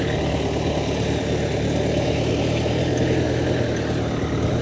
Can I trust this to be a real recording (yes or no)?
yes